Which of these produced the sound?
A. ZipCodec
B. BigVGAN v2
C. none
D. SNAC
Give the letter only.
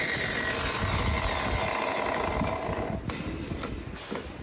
C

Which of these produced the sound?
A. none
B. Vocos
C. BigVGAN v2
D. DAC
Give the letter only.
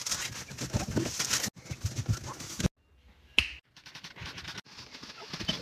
A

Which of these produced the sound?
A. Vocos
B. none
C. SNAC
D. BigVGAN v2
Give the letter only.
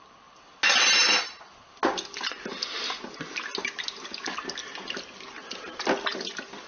B